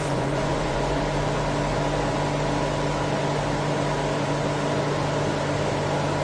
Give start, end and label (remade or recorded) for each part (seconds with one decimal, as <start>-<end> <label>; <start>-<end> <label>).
0.0-1.0 remade; 1.0-6.2 recorded